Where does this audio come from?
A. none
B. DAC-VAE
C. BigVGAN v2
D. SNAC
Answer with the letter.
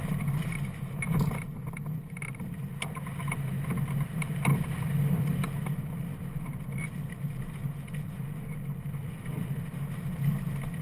A